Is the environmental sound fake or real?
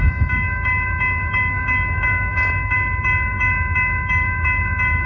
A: fake